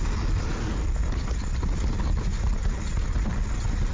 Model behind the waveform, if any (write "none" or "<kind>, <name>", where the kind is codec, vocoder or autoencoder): none